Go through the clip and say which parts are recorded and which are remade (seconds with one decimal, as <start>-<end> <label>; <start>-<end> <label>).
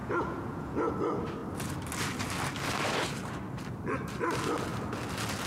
0.0-0.9 remade; 0.9-5.5 recorded